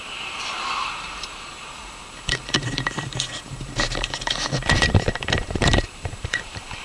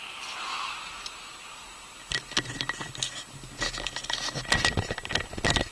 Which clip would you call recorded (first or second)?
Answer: second